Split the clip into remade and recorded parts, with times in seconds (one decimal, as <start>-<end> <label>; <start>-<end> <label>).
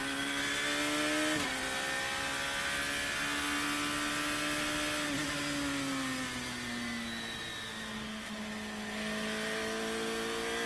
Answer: 0.0-10.7 recorded